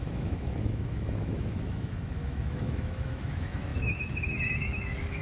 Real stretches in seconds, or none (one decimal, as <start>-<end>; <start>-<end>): none